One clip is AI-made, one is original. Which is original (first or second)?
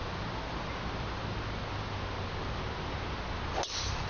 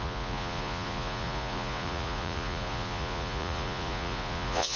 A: first